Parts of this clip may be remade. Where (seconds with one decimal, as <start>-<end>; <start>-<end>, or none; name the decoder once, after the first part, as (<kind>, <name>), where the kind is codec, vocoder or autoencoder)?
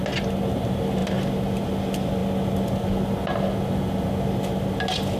none